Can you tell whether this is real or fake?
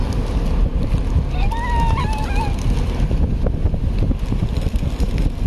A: real